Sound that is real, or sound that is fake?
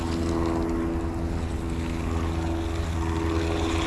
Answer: real